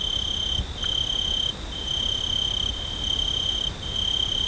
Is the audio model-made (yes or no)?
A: no